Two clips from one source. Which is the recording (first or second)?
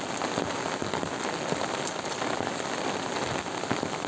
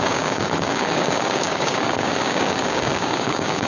first